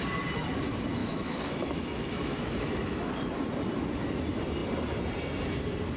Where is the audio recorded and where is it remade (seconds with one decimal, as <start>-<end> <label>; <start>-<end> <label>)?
0.0-1.0 recorded; 1.0-3.1 remade; 3.1-6.0 recorded